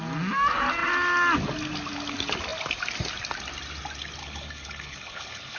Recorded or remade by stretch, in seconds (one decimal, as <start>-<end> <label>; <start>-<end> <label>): 0.0-4.2 recorded; 4.2-5.6 remade